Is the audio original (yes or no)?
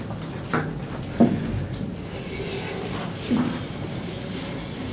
yes